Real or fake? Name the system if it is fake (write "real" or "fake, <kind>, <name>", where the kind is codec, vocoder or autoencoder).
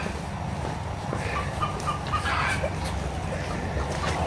real